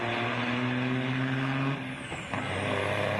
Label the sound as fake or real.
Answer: real